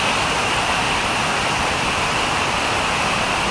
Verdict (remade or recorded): recorded